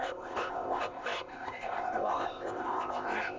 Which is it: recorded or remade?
remade